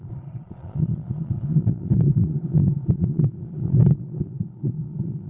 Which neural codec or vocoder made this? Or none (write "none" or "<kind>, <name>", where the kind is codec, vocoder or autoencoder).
vocoder, Vocos